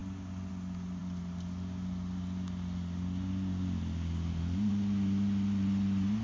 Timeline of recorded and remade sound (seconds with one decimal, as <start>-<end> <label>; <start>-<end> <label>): 0.0-6.2 recorded